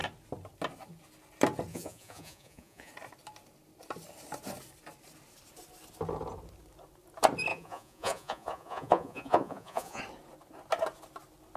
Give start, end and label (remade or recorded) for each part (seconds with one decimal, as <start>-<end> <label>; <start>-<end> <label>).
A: 0.0-1.7 recorded; 1.7-2.9 remade; 2.9-7.5 recorded; 7.5-10.0 remade; 10.0-11.6 recorded